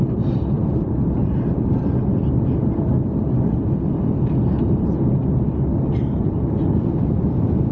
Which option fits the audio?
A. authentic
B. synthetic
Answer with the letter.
A